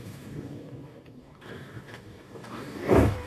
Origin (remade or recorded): remade